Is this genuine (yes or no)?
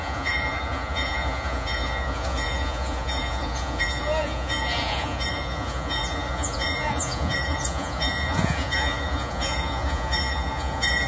no